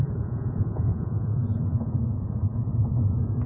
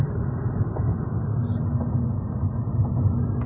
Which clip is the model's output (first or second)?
first